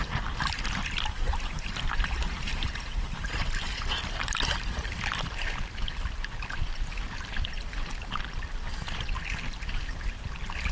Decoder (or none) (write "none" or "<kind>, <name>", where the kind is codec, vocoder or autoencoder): none